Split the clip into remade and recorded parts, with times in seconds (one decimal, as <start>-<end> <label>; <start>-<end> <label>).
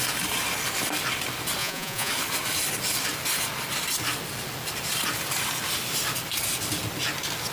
0.0-1.6 recorded; 1.6-2.1 remade; 2.1-7.5 recorded